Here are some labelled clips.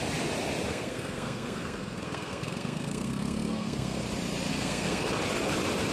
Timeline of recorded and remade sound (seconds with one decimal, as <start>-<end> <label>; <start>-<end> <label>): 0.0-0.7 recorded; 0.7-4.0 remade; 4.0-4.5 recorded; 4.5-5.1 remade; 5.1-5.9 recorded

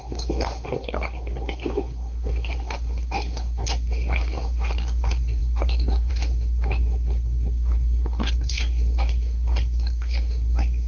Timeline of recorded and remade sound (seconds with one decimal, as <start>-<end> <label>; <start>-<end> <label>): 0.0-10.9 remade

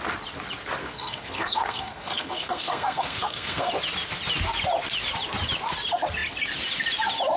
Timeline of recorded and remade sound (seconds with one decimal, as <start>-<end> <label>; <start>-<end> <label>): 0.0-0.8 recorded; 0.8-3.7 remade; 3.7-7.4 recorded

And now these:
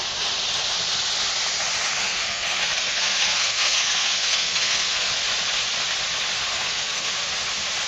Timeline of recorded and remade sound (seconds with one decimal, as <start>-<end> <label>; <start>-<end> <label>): 0.0-2.0 recorded; 2.0-5.1 remade; 5.1-6.5 recorded; 6.5-7.1 remade; 7.1-7.9 recorded

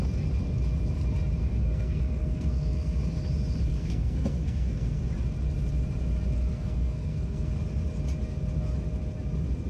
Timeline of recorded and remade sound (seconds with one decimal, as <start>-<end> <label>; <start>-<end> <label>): 0.0-1.4 recorded; 1.4-3.0 remade; 3.0-3.7 recorded; 3.7-5.0 remade; 5.0-6.5 recorded; 6.5-7.5 remade; 7.5-9.7 recorded

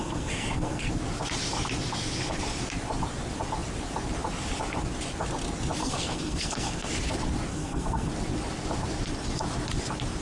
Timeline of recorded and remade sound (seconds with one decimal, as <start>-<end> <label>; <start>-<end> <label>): 0.0-0.9 remade; 0.9-5.8 recorded; 5.8-6.9 remade; 6.9-7.5 recorded; 7.5-8.1 remade; 8.1-10.2 recorded

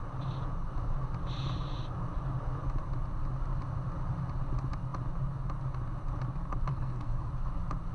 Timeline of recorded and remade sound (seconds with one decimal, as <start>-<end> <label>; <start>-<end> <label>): 0.0-6.7 recorded; 6.7-7.3 remade; 7.3-7.9 recorded

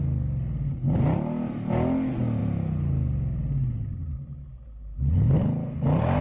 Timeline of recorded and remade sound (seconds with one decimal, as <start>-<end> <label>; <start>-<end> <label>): 0.0-6.2 recorded